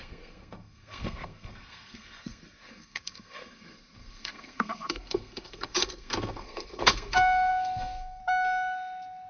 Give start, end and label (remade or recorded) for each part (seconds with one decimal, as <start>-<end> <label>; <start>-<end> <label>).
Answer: 0.0-8.2 remade; 8.2-9.3 recorded